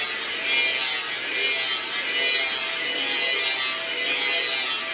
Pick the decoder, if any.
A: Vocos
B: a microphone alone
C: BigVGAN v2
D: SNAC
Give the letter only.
B